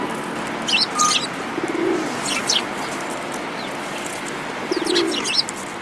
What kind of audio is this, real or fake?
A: real